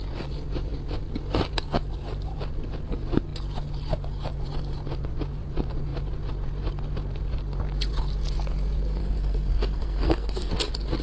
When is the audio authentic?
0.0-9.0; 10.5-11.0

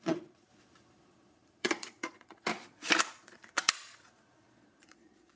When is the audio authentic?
2.5-3.1